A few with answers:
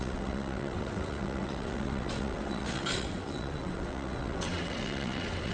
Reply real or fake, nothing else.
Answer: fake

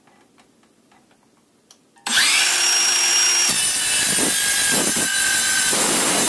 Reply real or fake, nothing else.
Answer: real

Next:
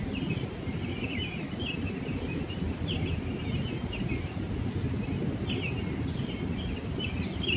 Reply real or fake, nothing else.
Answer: real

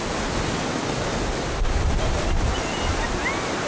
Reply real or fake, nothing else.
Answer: real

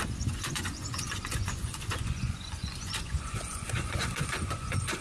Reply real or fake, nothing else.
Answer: fake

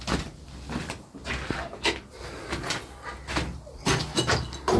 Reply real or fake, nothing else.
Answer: real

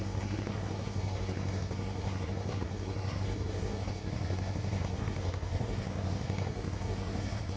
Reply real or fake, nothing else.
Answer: fake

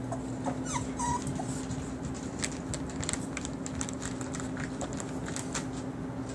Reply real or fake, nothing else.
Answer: real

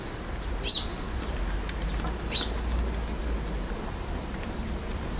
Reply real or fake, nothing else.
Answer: real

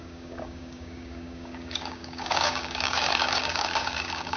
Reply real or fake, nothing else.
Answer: fake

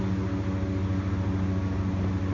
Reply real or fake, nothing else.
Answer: real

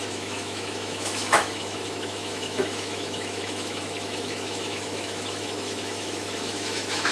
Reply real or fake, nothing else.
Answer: fake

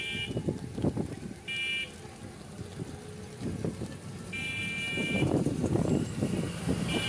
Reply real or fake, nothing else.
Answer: real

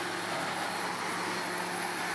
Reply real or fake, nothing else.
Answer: real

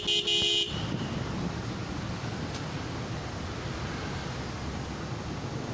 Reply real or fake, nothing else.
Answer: real